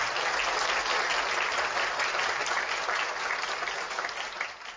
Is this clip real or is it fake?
real